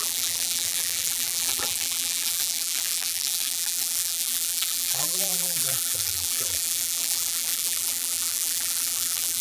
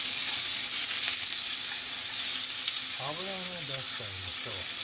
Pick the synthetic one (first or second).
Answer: first